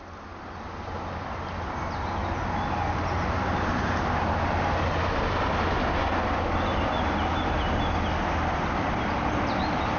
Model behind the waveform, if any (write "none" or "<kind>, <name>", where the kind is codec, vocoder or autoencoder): none